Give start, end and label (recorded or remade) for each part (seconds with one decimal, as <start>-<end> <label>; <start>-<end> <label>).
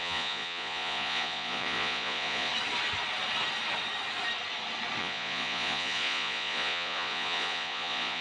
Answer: 0.0-2.5 remade; 2.5-5.0 recorded; 5.0-8.2 remade